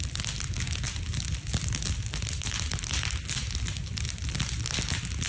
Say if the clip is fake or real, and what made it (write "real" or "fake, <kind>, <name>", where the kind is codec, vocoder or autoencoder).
real